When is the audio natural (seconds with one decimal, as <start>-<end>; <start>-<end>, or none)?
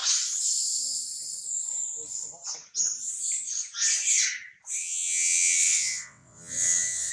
0.0-4.8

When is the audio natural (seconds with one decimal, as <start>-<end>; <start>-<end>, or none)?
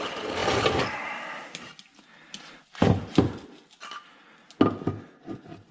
0.0-5.7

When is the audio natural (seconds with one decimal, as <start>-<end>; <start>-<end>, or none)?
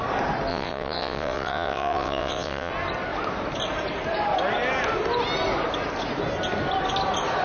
0.0-0.5; 2.7-7.4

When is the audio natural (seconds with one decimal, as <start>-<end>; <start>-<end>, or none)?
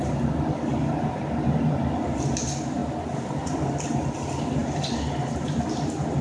0.0-6.2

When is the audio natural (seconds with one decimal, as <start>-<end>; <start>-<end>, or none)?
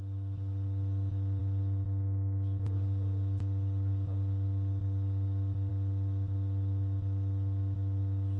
0.0-8.4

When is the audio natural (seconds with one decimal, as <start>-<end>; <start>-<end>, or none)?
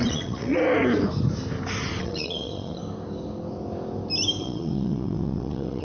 0.6-2.0; 2.8-4.4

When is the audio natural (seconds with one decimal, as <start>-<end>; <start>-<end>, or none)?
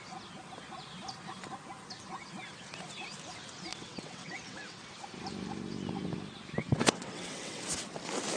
0.0-3.7; 4.9-6.6; 7.7-8.4